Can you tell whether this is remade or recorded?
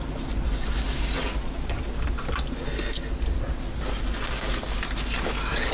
recorded